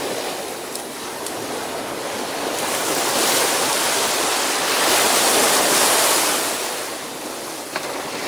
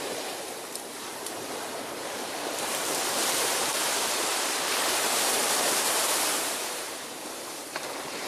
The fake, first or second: second